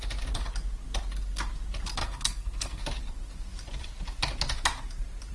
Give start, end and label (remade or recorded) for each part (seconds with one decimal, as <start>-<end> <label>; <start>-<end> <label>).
0.0-2.0 recorded; 2.0-2.8 remade; 2.8-5.3 recorded